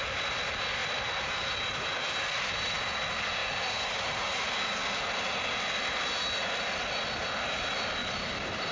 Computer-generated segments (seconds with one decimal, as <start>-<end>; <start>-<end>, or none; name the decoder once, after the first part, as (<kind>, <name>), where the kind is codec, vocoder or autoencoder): 8.0-8.7 (vocoder, BigVGAN v2)